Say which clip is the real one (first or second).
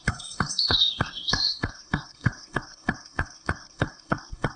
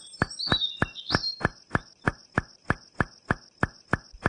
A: second